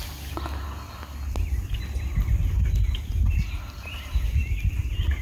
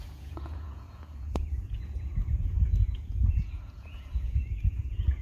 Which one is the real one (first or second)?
first